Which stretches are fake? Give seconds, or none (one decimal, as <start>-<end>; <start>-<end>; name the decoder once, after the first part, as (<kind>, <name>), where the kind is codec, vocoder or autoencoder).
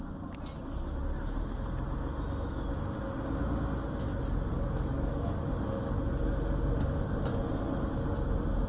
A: 4.5-5.6 (codec, DAC)